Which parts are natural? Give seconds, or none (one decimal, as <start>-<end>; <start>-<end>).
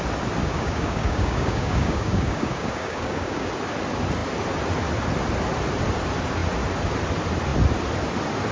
0.0-0.4; 3.5-8.5